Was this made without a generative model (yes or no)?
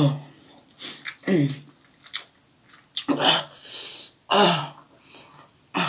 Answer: yes